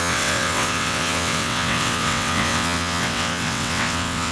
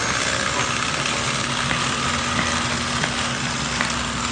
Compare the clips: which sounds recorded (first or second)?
second